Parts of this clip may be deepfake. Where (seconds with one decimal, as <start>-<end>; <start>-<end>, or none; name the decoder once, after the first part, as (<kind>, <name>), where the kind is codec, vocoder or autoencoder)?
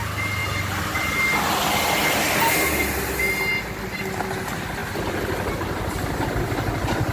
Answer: none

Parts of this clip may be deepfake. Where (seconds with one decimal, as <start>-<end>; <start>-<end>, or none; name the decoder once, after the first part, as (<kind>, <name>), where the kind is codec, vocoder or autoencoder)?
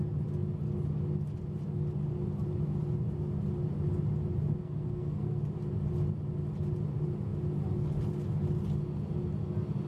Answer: 4.6-5.4 (codec, SNAC)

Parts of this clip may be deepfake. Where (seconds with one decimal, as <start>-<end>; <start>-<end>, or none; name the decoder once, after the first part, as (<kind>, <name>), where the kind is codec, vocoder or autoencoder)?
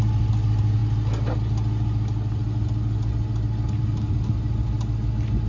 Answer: none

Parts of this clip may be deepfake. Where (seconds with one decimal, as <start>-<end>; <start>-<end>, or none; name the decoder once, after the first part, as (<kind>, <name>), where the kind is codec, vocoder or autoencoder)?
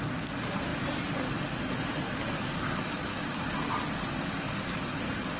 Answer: none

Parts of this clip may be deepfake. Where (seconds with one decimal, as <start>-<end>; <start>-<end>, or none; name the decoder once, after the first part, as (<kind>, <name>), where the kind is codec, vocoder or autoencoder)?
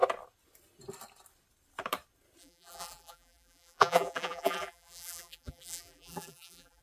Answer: 2.4-6.8 (vocoder, BigVGAN v2)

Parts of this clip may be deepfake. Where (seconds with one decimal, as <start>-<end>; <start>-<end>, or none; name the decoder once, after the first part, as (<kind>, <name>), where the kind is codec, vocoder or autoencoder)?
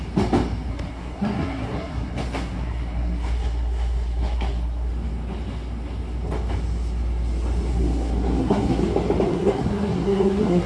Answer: 0.7-4.9 (codec, SNAC); 7.7-8.8; 9.3-10.7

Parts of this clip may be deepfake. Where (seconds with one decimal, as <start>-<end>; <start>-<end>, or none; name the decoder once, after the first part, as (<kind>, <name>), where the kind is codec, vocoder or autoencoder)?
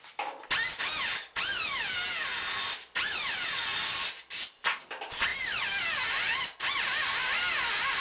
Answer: none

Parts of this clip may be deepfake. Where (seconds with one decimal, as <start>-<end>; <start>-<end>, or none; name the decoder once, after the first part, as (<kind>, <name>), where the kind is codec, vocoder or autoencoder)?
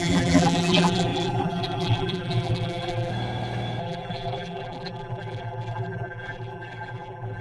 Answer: 0.0-3.1 (vocoder, BigVGAN v2); 3.8-7.4